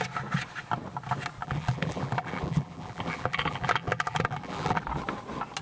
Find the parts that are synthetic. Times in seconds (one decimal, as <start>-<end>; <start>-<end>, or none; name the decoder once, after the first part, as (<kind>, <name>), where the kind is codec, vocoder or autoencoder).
1.4-4.8 (vocoder, BigVGAN v2)